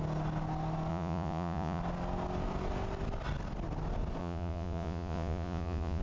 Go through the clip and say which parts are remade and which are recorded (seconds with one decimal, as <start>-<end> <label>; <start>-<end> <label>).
0.0-0.9 recorded; 0.9-1.8 remade; 1.8-4.2 recorded; 4.2-6.0 remade